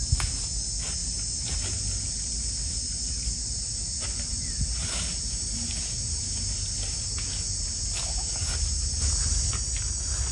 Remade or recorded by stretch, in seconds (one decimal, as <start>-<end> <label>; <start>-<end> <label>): 0.0-10.3 recorded

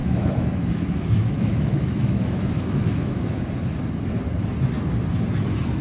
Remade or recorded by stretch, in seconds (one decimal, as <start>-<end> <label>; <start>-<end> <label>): 0.0-3.4 remade; 3.4-5.8 recorded

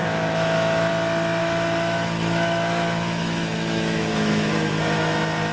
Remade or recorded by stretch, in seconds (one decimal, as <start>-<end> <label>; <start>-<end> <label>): 0.0-0.9 remade; 0.9-1.4 recorded; 1.4-4.7 remade; 4.7-5.5 recorded

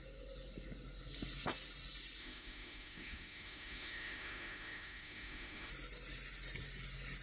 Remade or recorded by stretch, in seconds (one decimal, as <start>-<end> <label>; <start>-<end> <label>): 0.0-2.2 recorded; 2.2-5.7 remade; 5.7-7.2 recorded

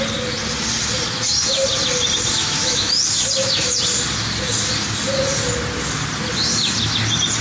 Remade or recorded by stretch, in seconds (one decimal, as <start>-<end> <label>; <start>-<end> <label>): 0.0-2.4 recorded; 2.4-2.9 remade; 2.9-7.4 recorded

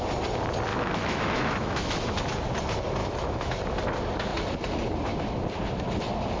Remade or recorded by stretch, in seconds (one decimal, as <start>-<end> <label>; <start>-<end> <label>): 0.0-0.7 recorded; 0.7-2.2 remade; 2.2-3.0 recorded; 3.0-3.5 remade; 3.5-6.4 recorded

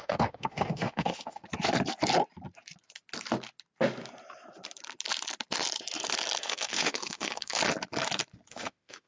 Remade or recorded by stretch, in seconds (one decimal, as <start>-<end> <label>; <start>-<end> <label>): 0.0-1.4 remade; 1.4-6.4 recorded; 6.4-7.6 remade; 7.6-8.5 recorded; 8.5-9.1 remade

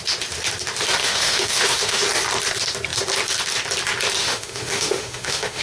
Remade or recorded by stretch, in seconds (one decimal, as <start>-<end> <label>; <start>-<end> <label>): 0.0-1.0 recorded; 1.0-2.0 remade; 2.0-4.2 recorded; 4.2-5.6 remade